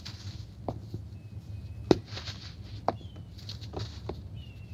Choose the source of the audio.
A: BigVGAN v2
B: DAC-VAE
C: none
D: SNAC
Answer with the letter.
C